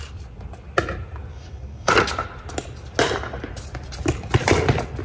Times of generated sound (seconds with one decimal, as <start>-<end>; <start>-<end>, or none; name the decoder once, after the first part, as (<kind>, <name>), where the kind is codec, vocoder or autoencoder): 1.3-1.9 (codec, DAC)